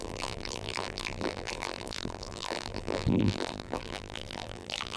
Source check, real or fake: fake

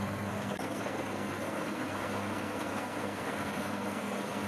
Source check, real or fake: fake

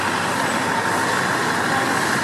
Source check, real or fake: real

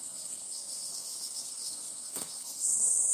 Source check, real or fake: fake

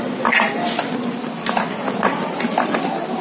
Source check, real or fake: real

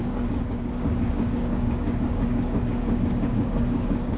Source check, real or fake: fake